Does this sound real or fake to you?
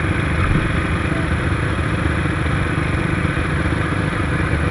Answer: real